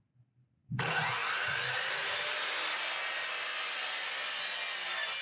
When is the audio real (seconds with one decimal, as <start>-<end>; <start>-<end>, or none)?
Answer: 0.0-5.2